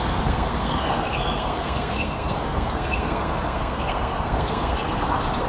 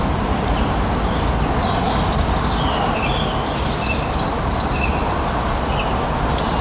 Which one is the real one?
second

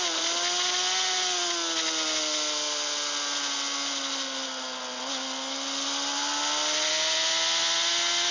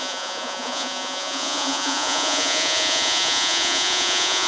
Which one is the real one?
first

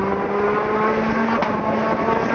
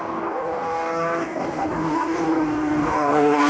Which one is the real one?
first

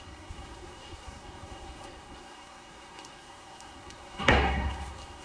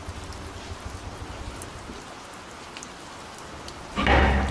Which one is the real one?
second